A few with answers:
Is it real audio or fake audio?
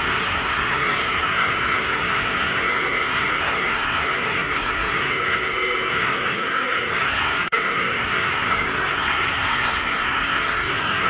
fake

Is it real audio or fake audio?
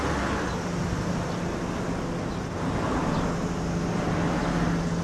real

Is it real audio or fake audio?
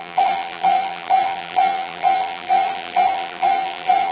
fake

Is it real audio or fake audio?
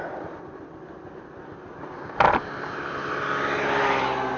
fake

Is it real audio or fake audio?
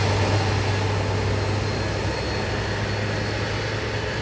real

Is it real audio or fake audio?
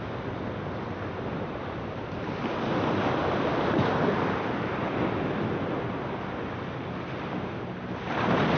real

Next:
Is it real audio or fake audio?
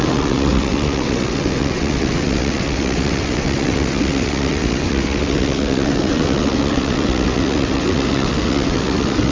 fake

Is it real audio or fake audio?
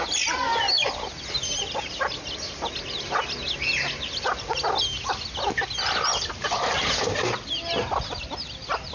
real